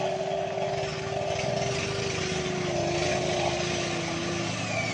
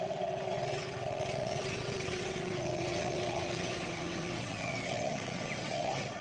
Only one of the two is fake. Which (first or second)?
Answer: second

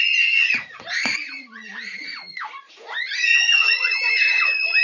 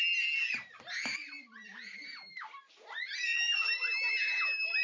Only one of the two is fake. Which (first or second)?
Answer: first